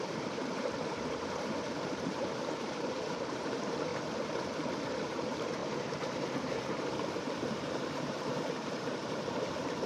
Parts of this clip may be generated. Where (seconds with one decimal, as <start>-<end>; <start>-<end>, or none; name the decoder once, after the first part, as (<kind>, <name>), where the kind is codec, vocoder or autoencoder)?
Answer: 0.0-3.9 (vocoder, BigVGAN v2); 5.1-9.9